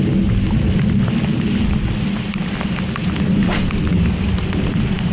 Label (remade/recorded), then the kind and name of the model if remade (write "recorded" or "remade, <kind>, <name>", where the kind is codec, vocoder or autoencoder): recorded